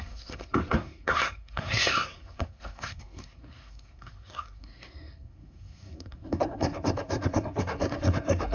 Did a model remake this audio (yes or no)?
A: yes